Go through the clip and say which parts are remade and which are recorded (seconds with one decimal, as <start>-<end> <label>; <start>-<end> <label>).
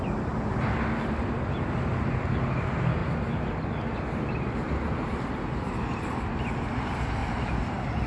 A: 0.0-8.1 recorded